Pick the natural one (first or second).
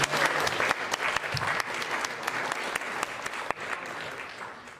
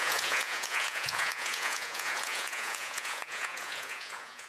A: first